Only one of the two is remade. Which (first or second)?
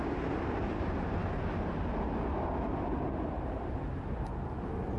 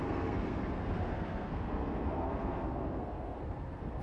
second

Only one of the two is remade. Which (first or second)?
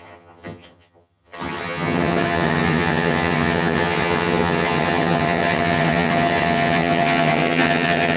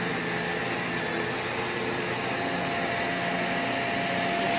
first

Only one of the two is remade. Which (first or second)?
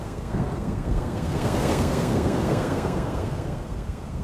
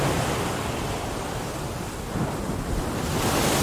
first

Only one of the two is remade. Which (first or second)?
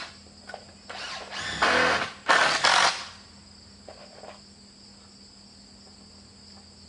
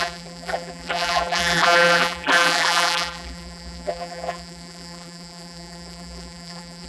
second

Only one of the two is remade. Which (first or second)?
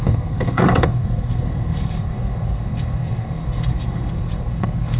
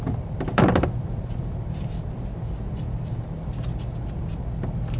first